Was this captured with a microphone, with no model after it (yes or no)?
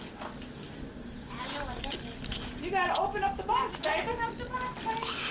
yes